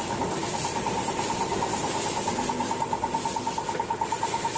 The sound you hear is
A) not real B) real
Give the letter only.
A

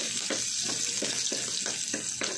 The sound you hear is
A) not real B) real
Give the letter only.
B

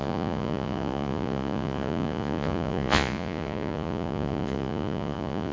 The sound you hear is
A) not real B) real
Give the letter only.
A